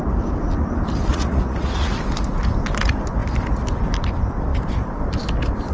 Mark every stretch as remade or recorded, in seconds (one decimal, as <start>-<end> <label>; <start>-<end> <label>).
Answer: 0.0-1.1 recorded; 1.1-1.9 remade; 1.9-5.7 recorded